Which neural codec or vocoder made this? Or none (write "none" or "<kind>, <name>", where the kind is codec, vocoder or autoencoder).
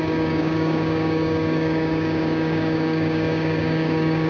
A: codec, DAC